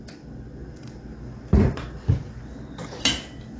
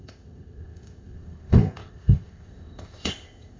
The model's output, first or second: second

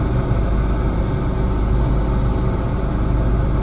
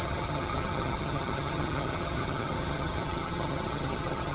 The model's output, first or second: second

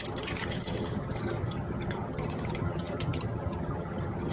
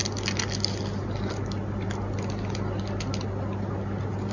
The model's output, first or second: first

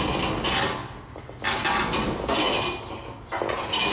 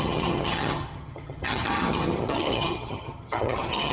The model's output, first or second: second